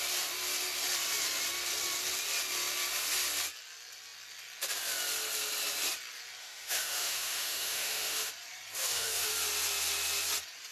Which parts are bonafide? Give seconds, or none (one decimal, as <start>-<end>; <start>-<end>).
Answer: 0.0-6.4; 8.3-8.8; 9.3-10.7